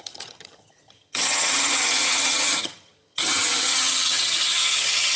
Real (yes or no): no